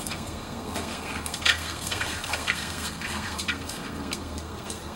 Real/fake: fake